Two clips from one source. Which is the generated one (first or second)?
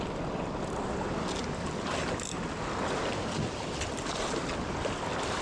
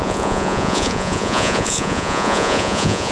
second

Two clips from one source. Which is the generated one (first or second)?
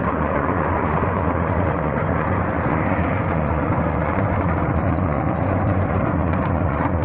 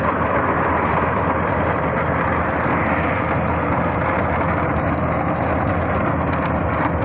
first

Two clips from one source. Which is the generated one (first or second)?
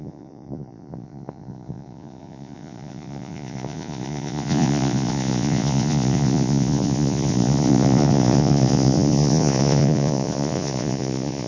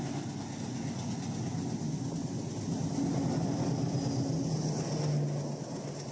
first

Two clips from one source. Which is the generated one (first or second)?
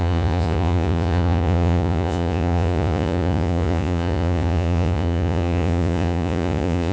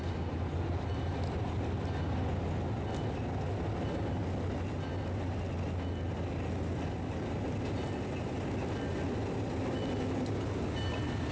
first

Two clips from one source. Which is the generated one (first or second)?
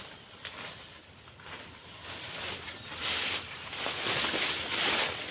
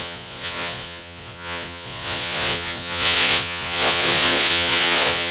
second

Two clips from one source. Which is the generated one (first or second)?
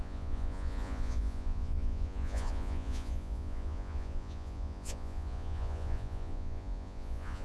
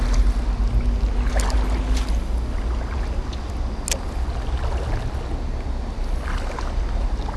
first